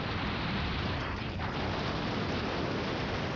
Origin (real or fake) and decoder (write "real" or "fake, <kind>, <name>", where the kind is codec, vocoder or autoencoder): real